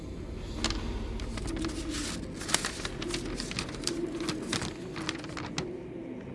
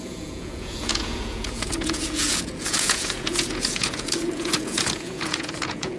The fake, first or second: second